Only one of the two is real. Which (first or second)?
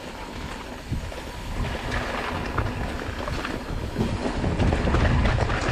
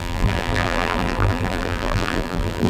first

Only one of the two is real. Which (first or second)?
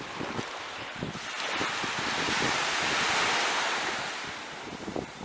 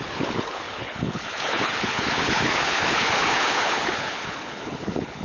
first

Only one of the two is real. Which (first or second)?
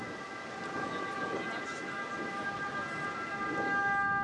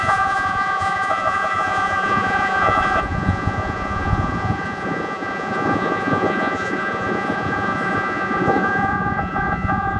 first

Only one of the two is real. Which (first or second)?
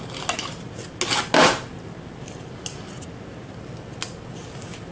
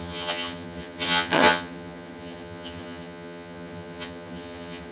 first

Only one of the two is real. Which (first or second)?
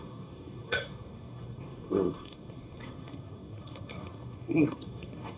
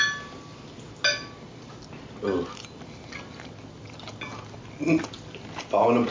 second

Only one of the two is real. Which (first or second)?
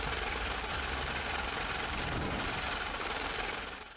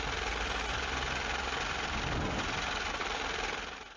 second